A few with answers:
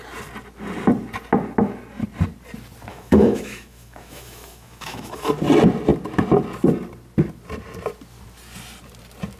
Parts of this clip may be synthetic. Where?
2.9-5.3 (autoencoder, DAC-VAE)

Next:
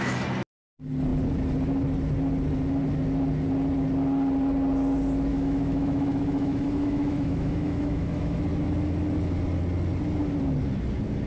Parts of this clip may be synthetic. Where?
5.3-8.4 (autoencoder, DAC-VAE)

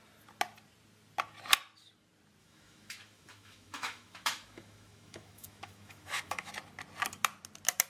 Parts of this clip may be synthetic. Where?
2.4-6.5 (autoencoder, DAC-VAE)

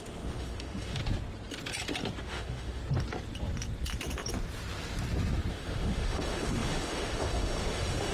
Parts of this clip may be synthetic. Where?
0.0-1.0 (autoencoder, DAC-VAE); 2.2-2.8; 5.5-8.1

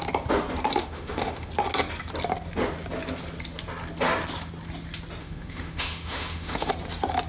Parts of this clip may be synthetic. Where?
0.8-1.5 (autoencoder, DAC-VAE); 5.2-6.7

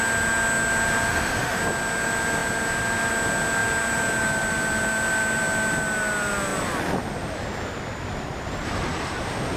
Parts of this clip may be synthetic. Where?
1.1-1.6 (autoencoder, DAC-VAE)

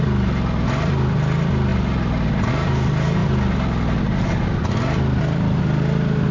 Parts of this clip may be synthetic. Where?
none

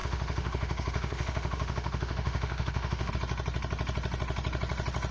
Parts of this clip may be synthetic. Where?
0.0-3.1 (autoencoder, DAC-VAE)